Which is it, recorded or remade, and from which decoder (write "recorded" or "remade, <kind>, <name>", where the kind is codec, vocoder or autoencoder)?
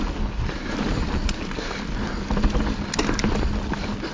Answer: recorded